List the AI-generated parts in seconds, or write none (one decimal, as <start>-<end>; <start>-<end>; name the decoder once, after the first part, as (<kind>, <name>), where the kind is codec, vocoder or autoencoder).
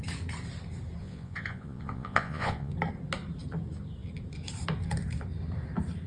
1.0-2.7 (vocoder, Vocos)